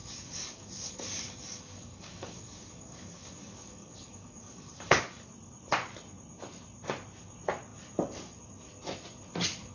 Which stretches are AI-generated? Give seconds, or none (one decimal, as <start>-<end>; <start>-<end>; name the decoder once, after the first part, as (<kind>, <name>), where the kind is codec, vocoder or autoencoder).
0.0-5.2 (codec, DAC)